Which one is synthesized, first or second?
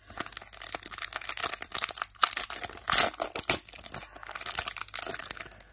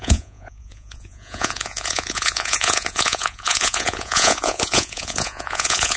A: second